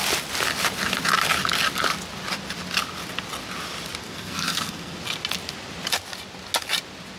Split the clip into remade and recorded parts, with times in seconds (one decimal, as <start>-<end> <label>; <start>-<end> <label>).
0.0-4.0 recorded; 4.0-5.0 remade; 5.0-7.2 recorded